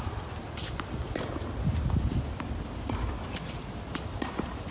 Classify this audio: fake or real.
real